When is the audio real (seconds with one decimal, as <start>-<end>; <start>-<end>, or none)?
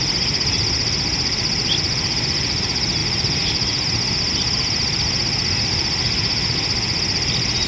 0.0-7.7